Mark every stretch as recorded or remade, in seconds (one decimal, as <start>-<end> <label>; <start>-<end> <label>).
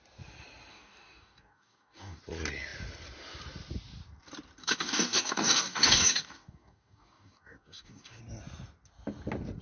0.0-0.7 recorded; 0.7-2.2 remade; 2.2-4.6 recorded; 4.6-8.2 remade; 8.2-9.6 recorded